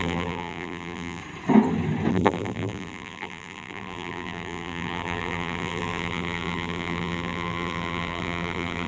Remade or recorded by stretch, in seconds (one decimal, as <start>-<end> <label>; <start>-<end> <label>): 0.0-1.2 remade; 1.2-2.1 recorded; 2.1-8.9 remade

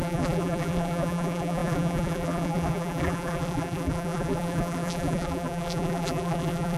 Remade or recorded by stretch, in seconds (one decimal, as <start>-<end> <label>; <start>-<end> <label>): 0.0-6.8 remade

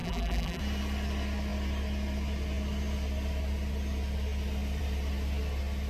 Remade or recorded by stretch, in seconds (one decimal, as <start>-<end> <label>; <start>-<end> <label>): 0.0-0.6 remade; 0.6-5.9 recorded

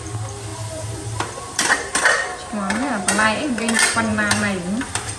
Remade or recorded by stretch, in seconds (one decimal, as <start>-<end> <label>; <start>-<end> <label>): 0.0-0.5 recorded; 0.5-3.6 remade; 3.6-4.1 recorded; 4.1-5.2 remade

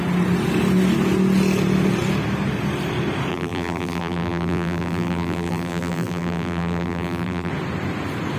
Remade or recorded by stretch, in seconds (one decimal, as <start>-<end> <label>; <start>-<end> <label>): 0.0-3.3 recorded; 3.3-7.5 remade; 7.5-8.4 recorded

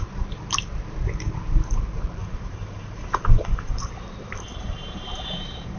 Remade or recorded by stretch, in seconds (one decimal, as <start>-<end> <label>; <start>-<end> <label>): 0.0-2.2 recorded; 2.2-5.8 remade

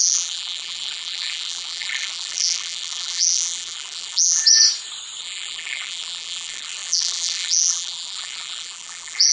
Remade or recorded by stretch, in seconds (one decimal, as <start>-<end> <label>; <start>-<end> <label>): 0.0-4.4 remade; 4.4-5.2 recorded; 5.2-9.3 remade